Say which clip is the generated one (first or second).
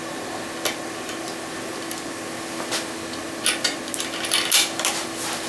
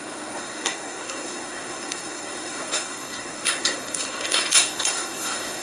second